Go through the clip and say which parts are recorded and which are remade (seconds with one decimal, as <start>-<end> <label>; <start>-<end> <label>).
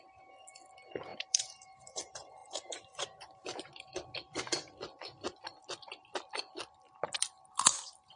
0.0-1.1 recorded; 1.1-2.0 remade; 2.0-2.4 recorded; 2.4-3.9 remade; 3.9-8.2 recorded